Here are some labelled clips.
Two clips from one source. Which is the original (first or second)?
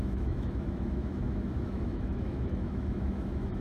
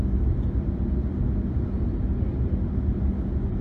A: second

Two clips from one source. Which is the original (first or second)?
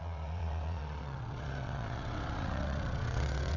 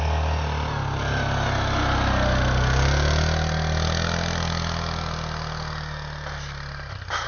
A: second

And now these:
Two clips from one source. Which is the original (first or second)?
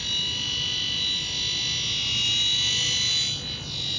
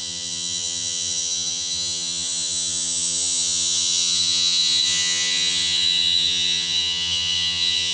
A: first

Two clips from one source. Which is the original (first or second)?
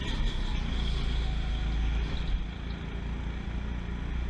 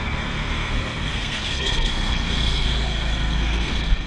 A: first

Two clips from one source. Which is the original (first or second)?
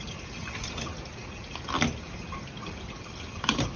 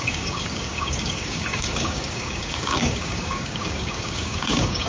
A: first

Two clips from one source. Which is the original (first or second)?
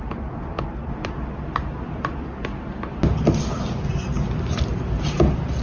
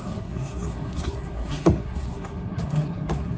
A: first